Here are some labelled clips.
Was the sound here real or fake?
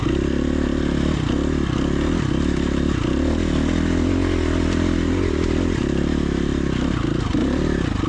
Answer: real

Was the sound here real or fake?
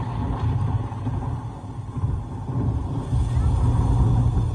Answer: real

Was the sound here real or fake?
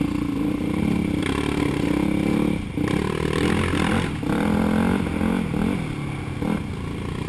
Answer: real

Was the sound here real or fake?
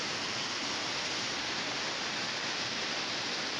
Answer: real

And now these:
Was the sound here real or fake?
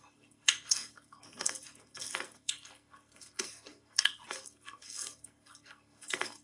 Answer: fake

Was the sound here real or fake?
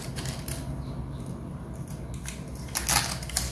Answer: real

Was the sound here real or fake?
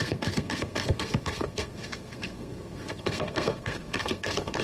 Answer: fake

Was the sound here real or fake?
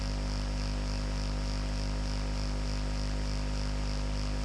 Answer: real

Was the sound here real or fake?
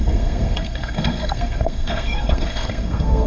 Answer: fake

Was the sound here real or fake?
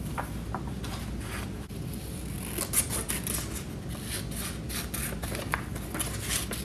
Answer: real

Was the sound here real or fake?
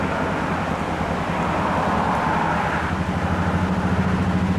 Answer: real